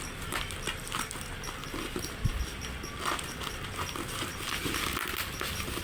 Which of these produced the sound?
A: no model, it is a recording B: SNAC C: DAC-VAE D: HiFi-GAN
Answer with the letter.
A